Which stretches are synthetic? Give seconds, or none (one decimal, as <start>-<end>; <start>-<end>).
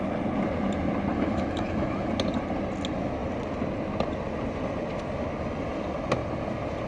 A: 1.1-2.1